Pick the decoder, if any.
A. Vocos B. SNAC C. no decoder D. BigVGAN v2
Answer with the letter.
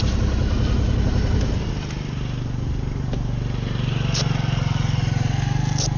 C